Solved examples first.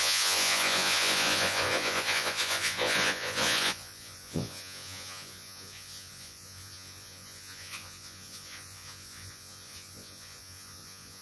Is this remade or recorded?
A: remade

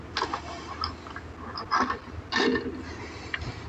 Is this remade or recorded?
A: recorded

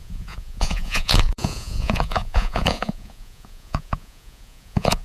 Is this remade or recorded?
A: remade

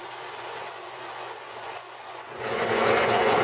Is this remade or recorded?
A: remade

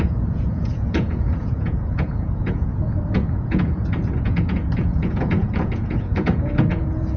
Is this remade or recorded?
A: remade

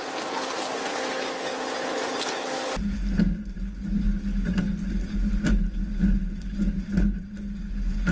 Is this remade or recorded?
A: recorded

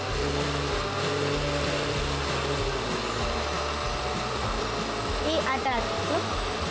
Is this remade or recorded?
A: recorded